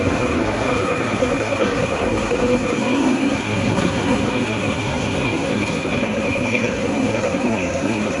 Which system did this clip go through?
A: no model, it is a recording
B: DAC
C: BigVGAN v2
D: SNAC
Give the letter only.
D